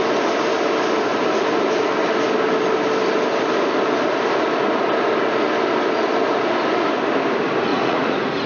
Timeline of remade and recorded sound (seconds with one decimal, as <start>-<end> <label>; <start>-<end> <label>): 0.0-7.7 recorded; 7.7-8.5 remade